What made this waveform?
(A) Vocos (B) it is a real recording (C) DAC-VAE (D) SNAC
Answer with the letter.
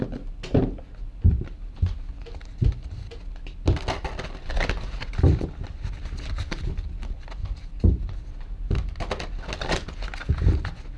B